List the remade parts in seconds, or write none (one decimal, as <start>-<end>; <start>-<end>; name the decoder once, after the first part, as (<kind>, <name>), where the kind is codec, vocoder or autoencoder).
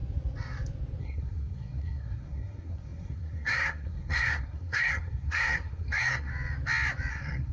1.0-6.3 (codec, SNAC); 7.1-7.5